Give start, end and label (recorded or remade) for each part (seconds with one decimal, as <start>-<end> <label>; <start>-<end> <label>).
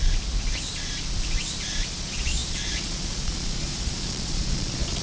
0.0-1.9 recorded; 1.9-5.0 remade